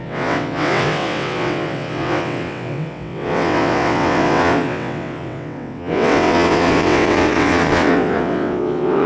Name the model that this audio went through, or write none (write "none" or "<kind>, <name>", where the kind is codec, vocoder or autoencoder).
vocoder, WaveNeXt